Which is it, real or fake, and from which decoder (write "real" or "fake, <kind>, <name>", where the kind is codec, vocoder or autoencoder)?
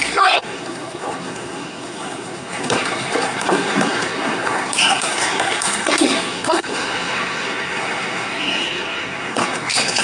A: fake, codec, SNAC